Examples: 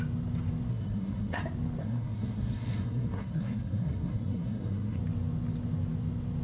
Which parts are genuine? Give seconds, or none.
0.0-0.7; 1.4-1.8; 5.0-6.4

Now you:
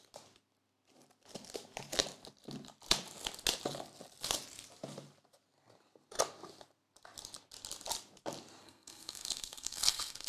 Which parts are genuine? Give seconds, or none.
0.0-8.6

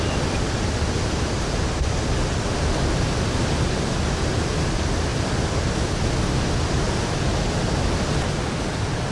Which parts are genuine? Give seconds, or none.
0.0-9.1